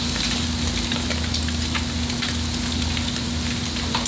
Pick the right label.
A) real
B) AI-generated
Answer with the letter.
A